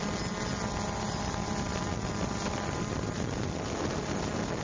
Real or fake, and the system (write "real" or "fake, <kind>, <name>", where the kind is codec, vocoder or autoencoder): real